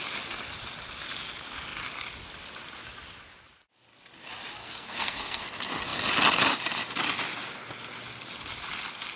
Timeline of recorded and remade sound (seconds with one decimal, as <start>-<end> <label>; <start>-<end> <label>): 0.0-4.6 recorded; 4.6-5.5 remade; 5.5-9.2 recorded